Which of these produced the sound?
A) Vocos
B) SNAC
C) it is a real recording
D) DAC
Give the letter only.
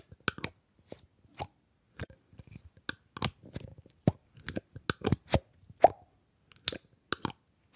C